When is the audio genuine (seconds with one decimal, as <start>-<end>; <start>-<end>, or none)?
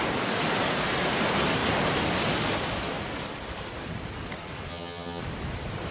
0.0-4.7; 5.2-5.9